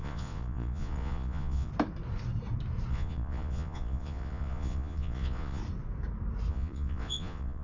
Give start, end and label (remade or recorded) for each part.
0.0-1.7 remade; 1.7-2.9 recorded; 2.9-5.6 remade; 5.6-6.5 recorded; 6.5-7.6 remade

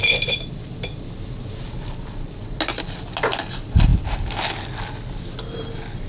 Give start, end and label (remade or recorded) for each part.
0.0-6.1 recorded

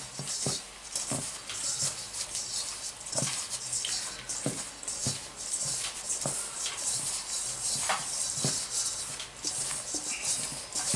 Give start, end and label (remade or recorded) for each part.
0.0-11.0 recorded

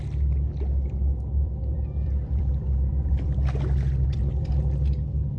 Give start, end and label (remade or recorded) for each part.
0.0-1.3 recorded; 1.3-4.5 remade; 4.5-5.4 recorded

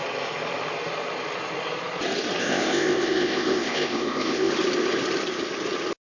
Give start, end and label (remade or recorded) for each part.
0.0-2.4 recorded; 2.4-4.5 remade; 4.5-6.1 recorded